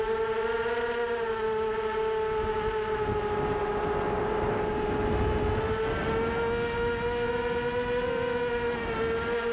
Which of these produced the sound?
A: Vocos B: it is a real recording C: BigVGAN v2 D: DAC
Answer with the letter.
B